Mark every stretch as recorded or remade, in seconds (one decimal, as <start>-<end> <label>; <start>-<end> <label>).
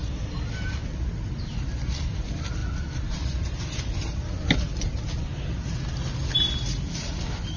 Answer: 0.0-7.6 recorded